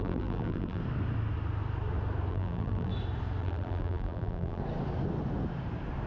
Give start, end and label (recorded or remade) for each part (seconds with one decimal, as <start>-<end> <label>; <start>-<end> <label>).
0.0-0.8 remade; 0.8-2.3 recorded; 2.3-2.9 remade; 2.9-3.4 recorded; 3.4-4.6 remade; 4.6-6.1 recorded